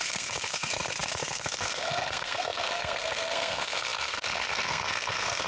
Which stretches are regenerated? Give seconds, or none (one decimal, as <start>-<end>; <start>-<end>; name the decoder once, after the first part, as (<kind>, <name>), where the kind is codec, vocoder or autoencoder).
0.0-5.5 (codec, SNAC)